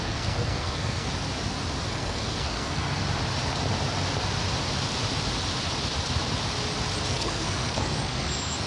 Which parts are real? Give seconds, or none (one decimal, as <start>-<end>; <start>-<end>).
1.1-1.9; 3.0-7.1